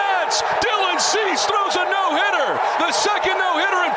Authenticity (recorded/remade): recorded